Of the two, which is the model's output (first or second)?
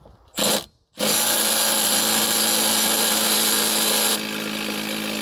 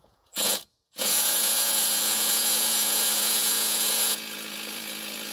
second